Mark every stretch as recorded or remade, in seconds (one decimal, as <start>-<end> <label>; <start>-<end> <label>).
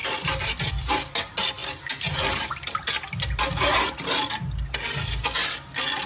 0.0-6.1 recorded